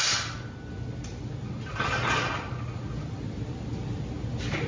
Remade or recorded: recorded